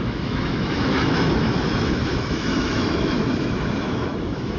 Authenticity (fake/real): fake